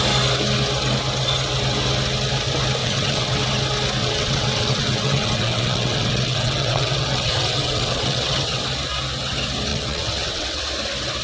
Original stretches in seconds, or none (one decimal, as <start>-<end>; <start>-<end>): 0.0-2.8; 3.4-4.0; 8.6-9.7; 10.6-11.2